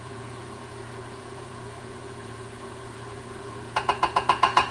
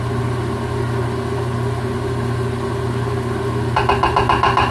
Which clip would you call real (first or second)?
second